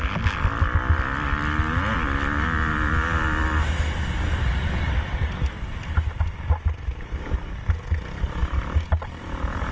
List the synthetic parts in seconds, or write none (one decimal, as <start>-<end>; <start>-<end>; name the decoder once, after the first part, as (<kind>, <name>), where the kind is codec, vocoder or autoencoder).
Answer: none